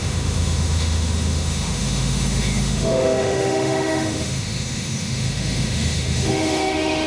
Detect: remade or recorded remade